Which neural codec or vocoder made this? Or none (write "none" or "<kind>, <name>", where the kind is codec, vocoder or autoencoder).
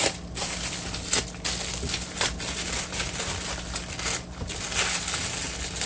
none